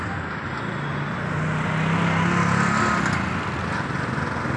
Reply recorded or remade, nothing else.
recorded